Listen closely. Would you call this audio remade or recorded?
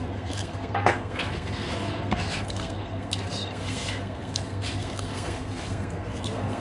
remade